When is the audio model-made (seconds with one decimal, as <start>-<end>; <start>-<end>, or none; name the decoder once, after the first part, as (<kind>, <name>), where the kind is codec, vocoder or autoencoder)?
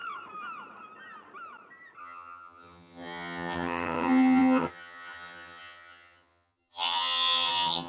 2.0-7.9 (vocoder, HiFi-GAN)